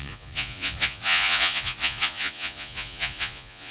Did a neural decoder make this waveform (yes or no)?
yes